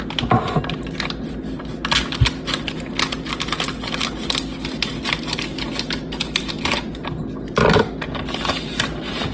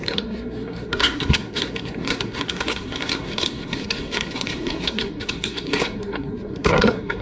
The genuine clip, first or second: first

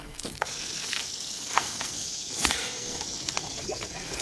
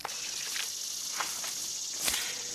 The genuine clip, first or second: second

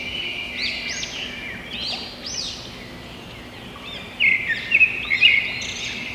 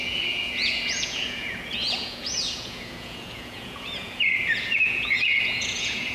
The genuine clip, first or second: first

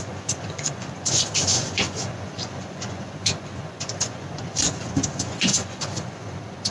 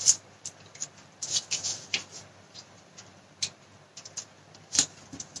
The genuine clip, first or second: second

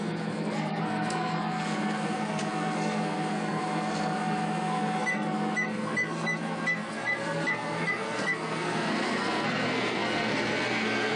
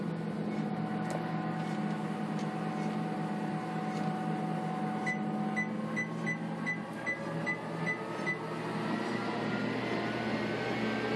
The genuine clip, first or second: second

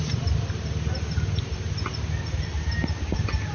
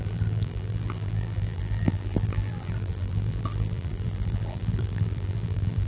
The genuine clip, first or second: first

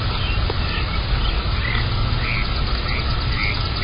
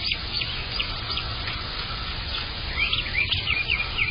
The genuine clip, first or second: first